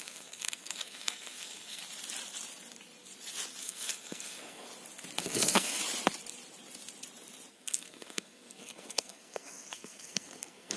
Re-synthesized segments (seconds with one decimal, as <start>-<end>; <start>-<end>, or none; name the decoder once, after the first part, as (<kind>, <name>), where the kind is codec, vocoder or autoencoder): 0.0-1.8 (codec, SNAC); 3.6-4.7; 5.2-5.8; 7.5-10.8